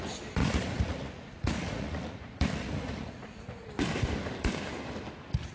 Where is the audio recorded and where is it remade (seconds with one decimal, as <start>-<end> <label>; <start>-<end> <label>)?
0.0-0.4 recorded; 0.4-3.7 remade; 3.7-5.5 recorded